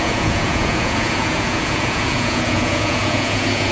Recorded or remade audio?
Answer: remade